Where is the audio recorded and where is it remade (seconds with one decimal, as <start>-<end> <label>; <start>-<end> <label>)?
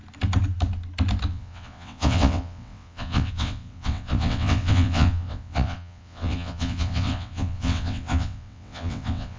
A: 0.0-1.3 recorded; 1.3-9.4 remade